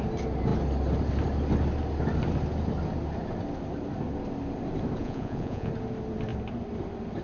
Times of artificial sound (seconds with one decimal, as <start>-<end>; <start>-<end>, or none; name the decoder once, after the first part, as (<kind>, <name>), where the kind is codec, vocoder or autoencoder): 5.0-5.7 (vocoder, Vocos)